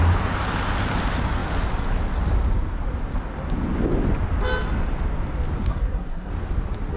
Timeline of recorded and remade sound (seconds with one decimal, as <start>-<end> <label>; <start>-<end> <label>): 0.0-5.7 recorded; 5.7-6.3 remade; 6.3-7.0 recorded